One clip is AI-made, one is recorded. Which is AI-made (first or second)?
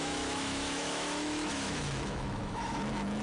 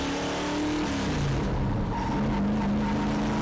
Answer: first